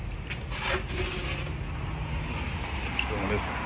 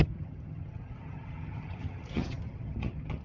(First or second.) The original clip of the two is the first